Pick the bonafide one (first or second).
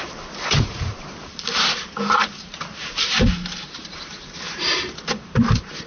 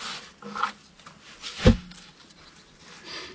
second